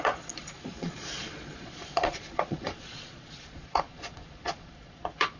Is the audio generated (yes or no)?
yes